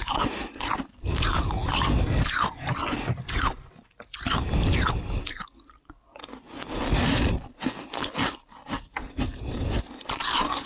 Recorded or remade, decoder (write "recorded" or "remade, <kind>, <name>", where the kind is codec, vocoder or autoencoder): recorded